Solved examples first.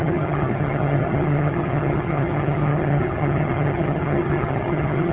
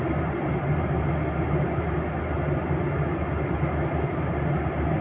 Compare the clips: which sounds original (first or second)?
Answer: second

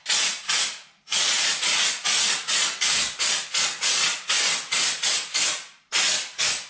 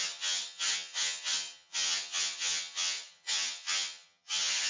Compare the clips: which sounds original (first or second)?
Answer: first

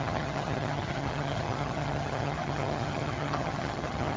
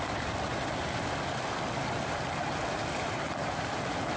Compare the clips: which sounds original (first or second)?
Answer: second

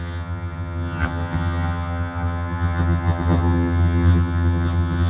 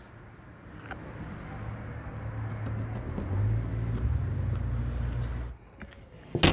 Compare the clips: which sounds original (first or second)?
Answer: second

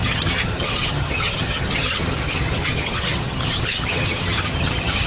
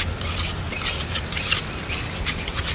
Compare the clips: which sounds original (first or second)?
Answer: second